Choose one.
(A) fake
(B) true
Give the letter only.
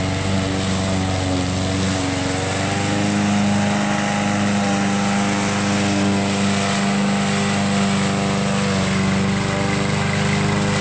B